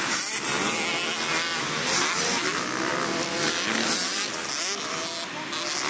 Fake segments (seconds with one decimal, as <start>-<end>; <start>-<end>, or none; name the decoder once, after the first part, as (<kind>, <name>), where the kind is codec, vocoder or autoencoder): none